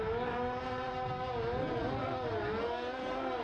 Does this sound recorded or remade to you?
recorded